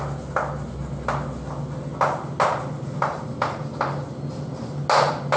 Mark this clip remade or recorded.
recorded